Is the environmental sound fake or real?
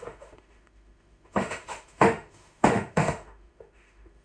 fake